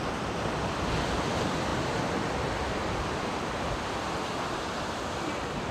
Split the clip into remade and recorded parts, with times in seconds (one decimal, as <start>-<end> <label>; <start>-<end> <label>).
0.0-5.7 recorded